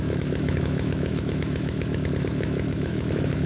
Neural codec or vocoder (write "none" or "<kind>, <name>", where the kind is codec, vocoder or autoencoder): autoencoder, DAC-VAE